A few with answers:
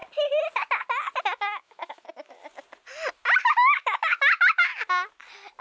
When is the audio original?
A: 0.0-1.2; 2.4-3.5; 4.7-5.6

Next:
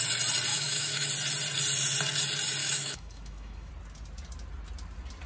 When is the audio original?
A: 0.0-0.5; 1.1-2.6; 3.7-5.3